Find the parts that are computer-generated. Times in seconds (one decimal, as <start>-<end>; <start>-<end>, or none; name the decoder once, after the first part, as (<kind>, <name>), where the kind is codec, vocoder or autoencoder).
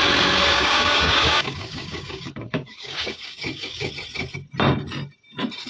0.5-3.9 (codec, DAC)